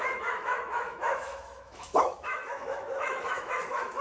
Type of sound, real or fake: fake